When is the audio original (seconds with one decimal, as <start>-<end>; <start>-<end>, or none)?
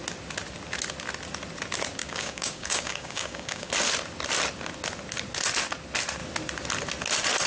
0.0-2.0; 3.7-7.5